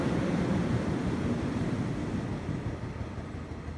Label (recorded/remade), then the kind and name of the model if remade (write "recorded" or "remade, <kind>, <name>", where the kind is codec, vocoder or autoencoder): recorded